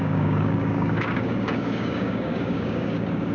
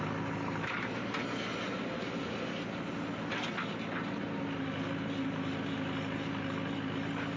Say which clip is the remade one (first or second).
first